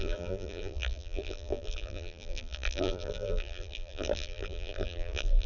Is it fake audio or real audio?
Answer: fake